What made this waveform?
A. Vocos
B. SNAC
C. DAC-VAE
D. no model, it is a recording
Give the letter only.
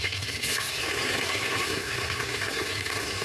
B